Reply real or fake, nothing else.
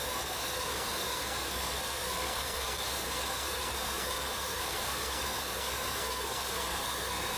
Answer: fake